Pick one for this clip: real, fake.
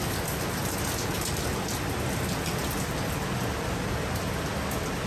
real